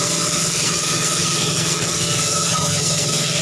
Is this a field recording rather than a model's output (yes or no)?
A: no